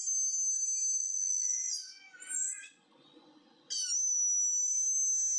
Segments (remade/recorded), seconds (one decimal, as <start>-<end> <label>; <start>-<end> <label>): 0.0-1.0 recorded; 1.0-3.7 remade; 3.7-5.4 recorded